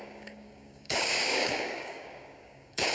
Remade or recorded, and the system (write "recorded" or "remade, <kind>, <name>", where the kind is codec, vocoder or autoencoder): remade, codec, DAC